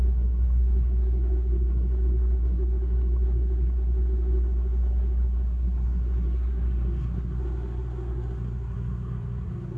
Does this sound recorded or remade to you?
remade